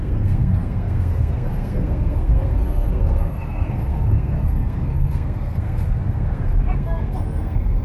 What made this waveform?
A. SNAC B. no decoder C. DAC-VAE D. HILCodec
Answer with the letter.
A